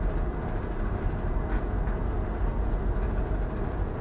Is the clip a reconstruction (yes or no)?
no